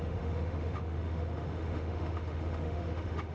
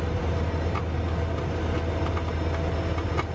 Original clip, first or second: second